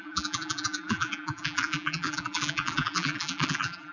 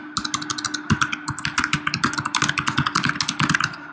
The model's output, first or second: first